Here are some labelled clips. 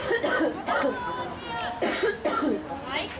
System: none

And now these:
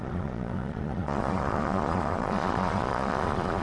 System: vocoder, Vocos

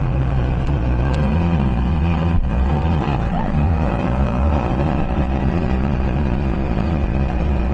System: vocoder, Vocos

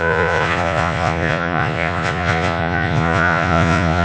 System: vocoder, Vocos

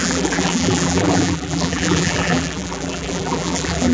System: vocoder, BigVGAN v2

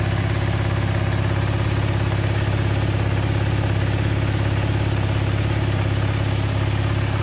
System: none